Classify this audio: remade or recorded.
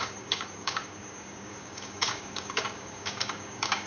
remade